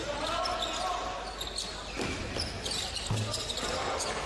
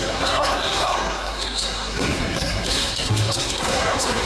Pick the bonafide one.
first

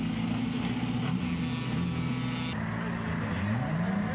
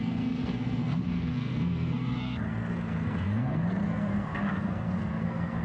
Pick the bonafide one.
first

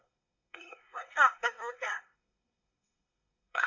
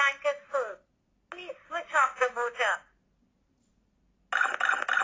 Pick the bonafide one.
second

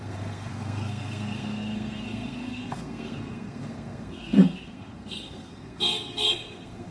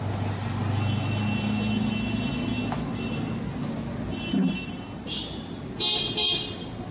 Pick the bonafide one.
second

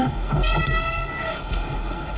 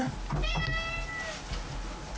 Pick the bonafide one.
second